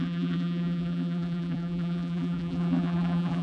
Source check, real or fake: fake